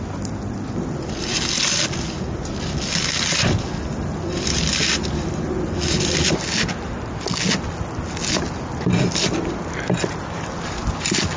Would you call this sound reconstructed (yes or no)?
no